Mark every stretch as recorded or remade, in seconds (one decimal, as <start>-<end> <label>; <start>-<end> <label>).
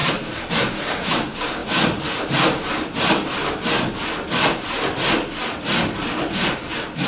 0.0-3.4 remade; 3.4-6.6 recorded; 6.6-7.1 remade